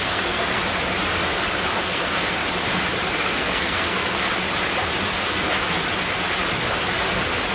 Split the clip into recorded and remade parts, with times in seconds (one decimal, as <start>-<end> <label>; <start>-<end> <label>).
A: 0.0-0.6 remade; 0.6-1.8 recorded; 1.8-2.4 remade; 2.4-3.2 recorded; 3.2-4.3 remade; 4.3-7.5 recorded